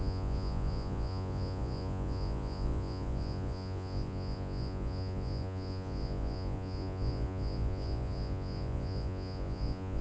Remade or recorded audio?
remade